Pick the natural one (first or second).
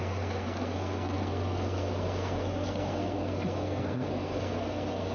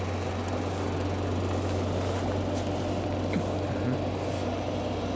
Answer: second